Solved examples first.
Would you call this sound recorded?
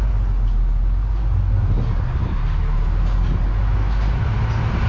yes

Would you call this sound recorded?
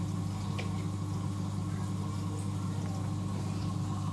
yes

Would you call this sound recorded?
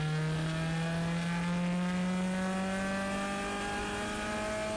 yes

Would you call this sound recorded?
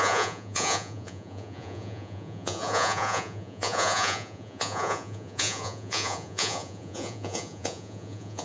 no